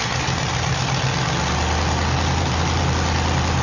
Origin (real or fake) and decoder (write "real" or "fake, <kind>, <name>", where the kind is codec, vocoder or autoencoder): real